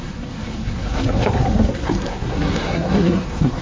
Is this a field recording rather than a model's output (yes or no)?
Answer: no